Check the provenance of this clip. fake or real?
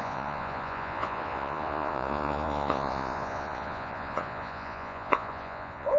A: fake